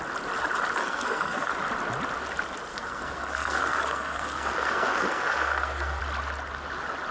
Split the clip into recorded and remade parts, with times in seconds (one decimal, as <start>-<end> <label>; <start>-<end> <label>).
0.0-0.8 recorded; 0.8-1.5 remade; 1.5-2.7 recorded; 2.7-6.0 remade; 6.0-7.1 recorded